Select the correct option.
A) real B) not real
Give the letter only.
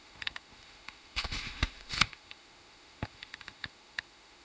B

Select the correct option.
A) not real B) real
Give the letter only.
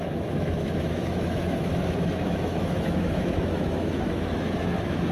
A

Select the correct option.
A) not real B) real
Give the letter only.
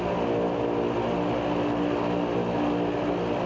B